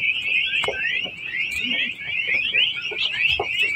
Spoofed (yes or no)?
no